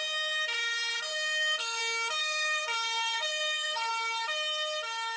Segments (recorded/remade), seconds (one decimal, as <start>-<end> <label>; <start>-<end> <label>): 0.0-1.1 recorded; 1.1-1.8 remade; 1.8-2.2 recorded; 2.2-3.9 remade; 3.9-5.2 recorded